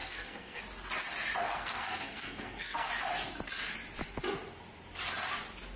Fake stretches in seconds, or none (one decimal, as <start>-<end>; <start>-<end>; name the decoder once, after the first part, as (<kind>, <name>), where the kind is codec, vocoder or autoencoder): 0.0-0.6 (codec, SNAC); 1.4-2.9